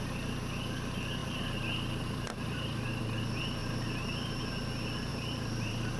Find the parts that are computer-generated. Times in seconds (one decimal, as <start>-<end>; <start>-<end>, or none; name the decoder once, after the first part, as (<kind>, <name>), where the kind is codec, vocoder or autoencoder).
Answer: 1.2-3.0 (vocoder, BigVGAN v2); 3.6-4.4; 5.1-6.0